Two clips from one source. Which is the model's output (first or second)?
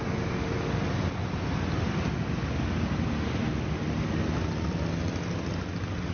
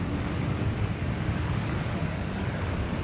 second